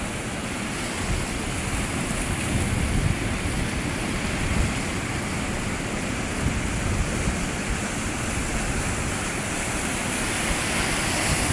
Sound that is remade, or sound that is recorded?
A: recorded